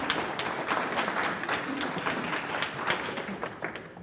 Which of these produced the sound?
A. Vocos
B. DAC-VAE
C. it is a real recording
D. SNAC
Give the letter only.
C